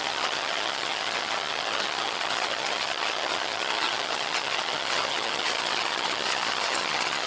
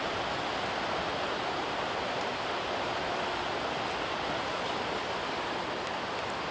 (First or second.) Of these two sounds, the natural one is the second